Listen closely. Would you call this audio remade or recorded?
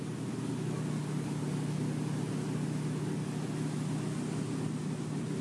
recorded